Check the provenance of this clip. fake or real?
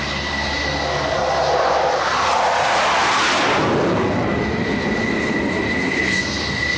real